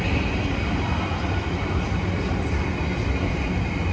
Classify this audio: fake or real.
real